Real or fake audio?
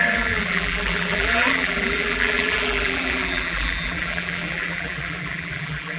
fake